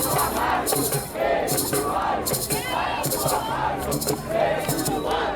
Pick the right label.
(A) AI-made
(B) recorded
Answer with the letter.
A